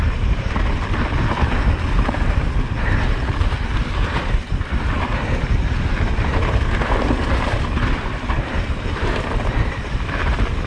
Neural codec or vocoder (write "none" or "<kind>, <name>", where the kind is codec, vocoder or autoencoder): none